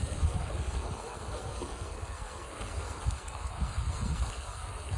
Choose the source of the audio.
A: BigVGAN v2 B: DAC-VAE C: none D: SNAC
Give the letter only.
D